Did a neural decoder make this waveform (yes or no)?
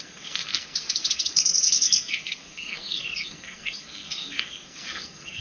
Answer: yes